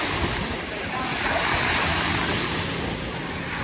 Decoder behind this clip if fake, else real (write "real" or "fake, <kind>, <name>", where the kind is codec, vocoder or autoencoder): real